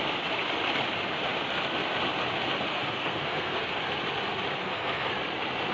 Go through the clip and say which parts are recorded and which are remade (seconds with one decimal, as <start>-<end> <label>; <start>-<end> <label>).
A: 0.0-2.7 recorded; 2.7-3.8 remade; 3.8-4.6 recorded; 4.6-5.1 remade; 5.1-5.7 recorded